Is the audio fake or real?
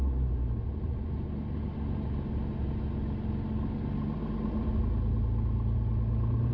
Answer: real